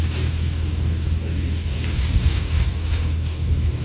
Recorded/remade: remade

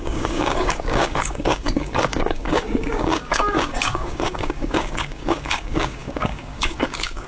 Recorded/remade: remade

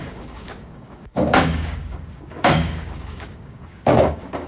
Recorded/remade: remade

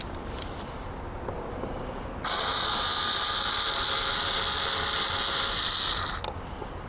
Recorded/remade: recorded